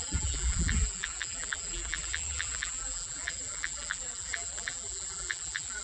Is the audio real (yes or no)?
no